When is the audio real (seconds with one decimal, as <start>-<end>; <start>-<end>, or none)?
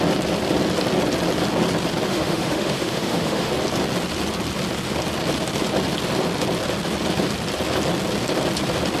0.0-2.1; 3.5-9.0